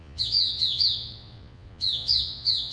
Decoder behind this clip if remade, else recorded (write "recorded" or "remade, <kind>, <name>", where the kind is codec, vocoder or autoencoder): remade, vocoder, Vocos